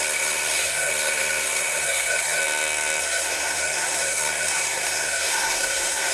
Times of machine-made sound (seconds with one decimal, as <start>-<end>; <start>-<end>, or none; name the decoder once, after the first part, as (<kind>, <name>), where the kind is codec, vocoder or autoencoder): 0.0-2.4 (codec, SNAC); 3.0-6.1